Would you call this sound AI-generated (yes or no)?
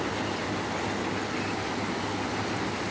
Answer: no